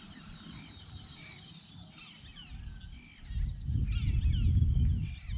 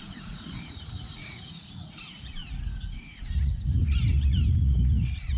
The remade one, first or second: second